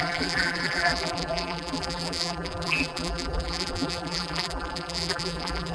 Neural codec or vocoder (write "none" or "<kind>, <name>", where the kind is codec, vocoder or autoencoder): vocoder, BigVGAN v2